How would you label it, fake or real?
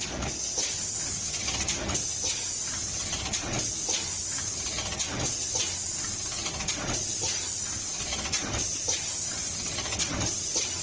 real